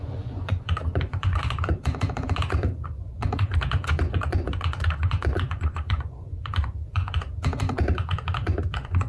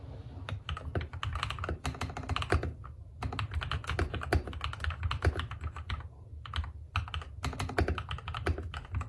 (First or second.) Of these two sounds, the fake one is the first